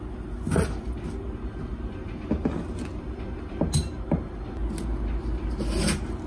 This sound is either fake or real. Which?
real